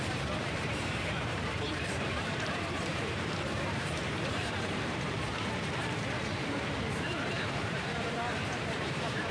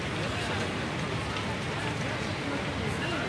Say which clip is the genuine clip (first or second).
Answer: second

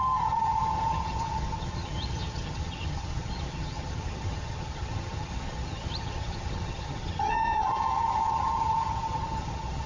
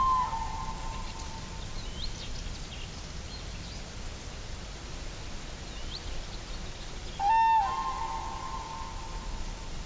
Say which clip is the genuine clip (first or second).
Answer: second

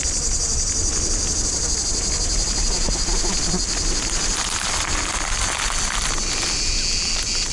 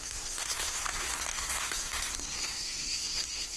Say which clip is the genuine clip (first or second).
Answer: first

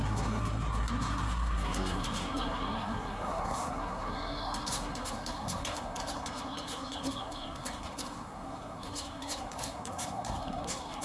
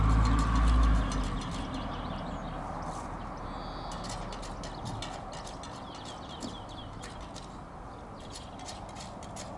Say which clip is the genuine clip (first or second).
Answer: second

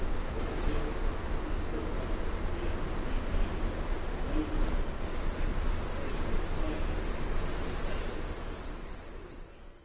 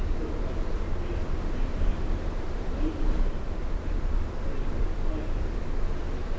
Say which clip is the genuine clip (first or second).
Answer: first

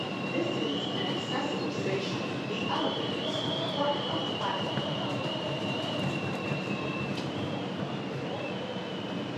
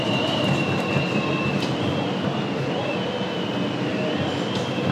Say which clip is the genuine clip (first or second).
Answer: second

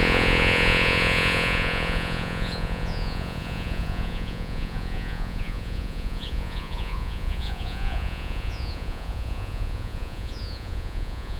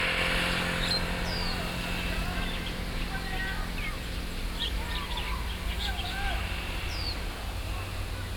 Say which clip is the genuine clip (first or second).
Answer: second